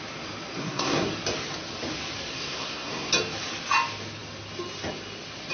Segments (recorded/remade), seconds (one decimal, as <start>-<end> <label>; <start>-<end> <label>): 0.0-0.6 recorded; 0.6-1.1 remade; 1.1-2.3 recorded; 2.3-3.1 remade; 3.1-5.5 recorded